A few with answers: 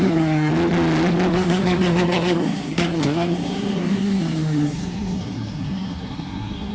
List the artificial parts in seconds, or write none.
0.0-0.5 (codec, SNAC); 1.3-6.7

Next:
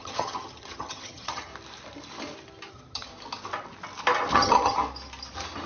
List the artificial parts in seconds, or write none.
0.0-1.5 (vocoder, HiFi-GAN); 2.7-3.1; 4.3-4.8

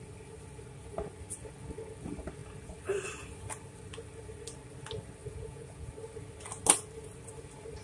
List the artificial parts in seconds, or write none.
5.2-5.9 (vocoder, Vocos)

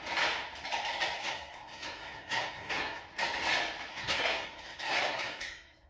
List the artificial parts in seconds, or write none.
1.2-3.0 (codec, SNAC); 3.9-5.9

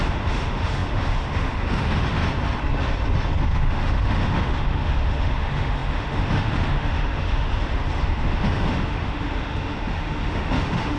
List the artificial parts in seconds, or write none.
0.0-2.2 (autoencoder, DAC-VAE); 3.4-11.0

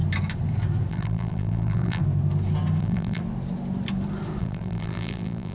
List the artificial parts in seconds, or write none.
0.9-2.0 (vocoder, BigVGAN v2); 2.8-3.2; 4.4-5.5

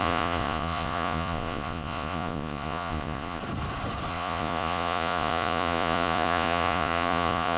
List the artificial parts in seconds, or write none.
0.0-3.4 (vocoder, Vocos); 4.1-7.6

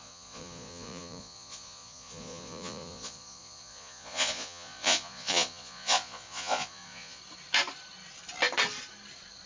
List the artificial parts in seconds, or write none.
0.0-7.2 (vocoder, Vocos)